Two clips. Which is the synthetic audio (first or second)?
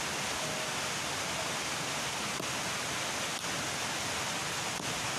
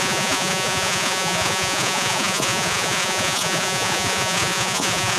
second